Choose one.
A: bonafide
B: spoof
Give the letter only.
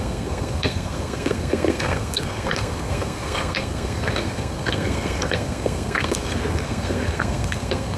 B